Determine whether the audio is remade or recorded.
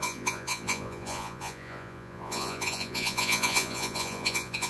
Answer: remade